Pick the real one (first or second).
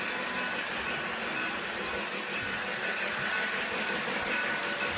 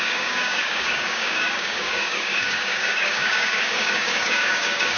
first